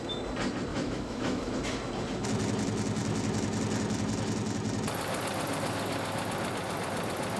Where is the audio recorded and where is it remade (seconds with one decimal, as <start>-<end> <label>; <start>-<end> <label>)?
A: 0.0-0.7 recorded; 0.7-1.5 remade; 1.5-7.4 recorded